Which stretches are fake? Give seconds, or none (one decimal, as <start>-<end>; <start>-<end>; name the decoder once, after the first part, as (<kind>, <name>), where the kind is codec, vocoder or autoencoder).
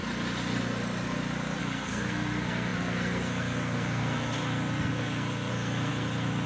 1.6-6.5 (codec, SNAC)